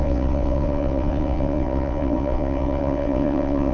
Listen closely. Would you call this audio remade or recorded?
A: remade